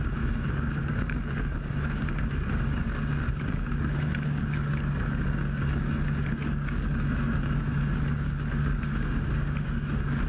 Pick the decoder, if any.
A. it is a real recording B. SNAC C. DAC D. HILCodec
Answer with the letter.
C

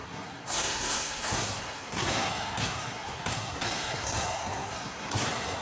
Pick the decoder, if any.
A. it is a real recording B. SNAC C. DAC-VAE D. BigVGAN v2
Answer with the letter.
B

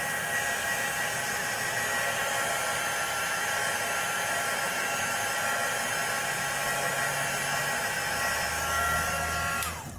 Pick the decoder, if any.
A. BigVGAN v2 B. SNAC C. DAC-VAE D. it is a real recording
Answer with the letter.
D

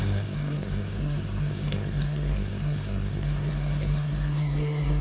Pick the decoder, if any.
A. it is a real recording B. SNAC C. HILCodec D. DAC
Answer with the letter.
B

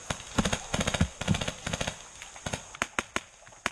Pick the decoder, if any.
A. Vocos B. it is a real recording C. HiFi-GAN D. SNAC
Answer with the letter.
B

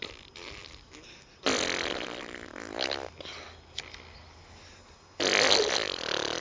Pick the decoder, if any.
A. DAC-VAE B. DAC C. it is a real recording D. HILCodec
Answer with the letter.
C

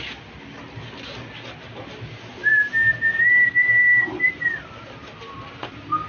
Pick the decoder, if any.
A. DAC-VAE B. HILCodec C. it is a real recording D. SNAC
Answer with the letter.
C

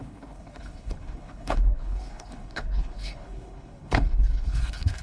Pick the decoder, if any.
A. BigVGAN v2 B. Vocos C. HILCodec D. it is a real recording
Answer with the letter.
C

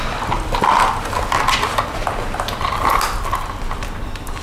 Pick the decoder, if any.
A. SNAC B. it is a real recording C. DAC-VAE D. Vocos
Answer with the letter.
B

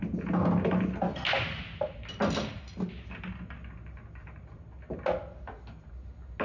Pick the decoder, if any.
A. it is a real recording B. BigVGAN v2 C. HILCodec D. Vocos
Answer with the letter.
A